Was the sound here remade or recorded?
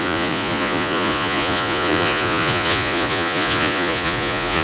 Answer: remade